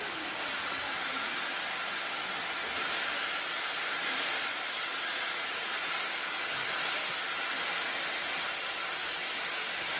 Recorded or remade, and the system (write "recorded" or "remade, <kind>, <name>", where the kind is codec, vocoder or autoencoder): recorded